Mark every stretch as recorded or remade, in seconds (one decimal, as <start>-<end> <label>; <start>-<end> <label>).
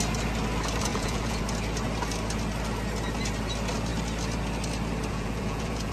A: 0.0-0.9 recorded; 0.9-1.4 remade; 1.4-5.1 recorded; 5.1-5.9 remade